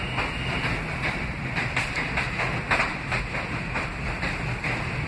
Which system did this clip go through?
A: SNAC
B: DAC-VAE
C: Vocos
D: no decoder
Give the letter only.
D